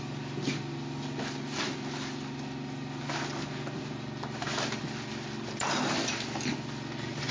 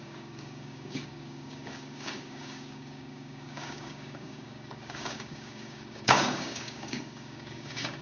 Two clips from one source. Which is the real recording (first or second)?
first